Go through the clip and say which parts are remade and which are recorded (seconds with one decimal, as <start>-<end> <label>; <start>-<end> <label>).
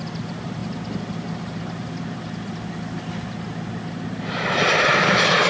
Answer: 0.0-5.5 recorded